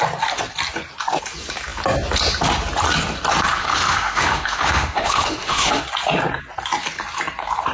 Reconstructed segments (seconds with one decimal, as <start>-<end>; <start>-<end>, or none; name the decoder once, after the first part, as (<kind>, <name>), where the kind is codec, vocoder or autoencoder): 3.6-5.8 (autoencoder, DAC-VAE)

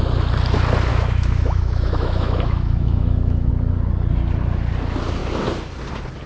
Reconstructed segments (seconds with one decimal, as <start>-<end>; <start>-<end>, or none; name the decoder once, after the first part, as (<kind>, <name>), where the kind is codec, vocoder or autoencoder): 0.9-3.5 (autoencoder, DAC-VAE)

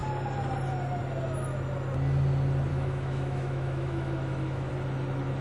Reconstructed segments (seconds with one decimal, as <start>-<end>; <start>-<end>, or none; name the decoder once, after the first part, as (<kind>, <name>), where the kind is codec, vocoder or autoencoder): 2.7-4.7 (autoencoder, DAC-VAE)

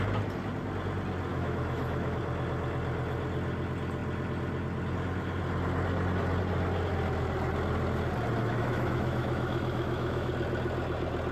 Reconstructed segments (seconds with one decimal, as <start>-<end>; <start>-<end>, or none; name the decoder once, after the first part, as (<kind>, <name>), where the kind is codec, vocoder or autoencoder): 1.3-2.2 (autoencoder, DAC-VAE); 8.4-10.3

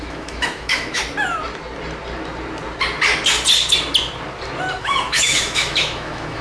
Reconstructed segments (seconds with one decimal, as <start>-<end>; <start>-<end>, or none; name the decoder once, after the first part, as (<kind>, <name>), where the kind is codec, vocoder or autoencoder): 0.0-1.0 (autoencoder, DAC-VAE); 4.8-6.4

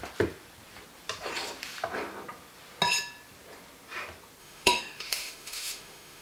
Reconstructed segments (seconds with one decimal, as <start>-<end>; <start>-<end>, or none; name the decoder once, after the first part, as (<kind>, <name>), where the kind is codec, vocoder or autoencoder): 4.4-6.2 (autoencoder, DAC-VAE)